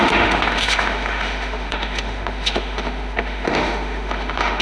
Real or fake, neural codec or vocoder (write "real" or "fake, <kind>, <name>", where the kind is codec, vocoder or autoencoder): fake, autoencoder, DAC-VAE